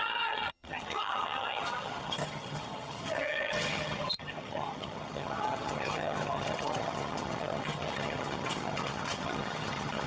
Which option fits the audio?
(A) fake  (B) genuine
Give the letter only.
A